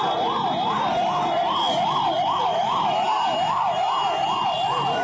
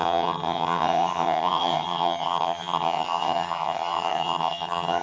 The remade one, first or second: second